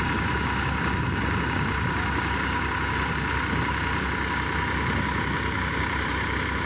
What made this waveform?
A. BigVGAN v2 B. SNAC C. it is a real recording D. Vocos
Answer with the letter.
C